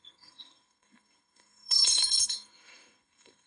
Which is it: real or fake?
fake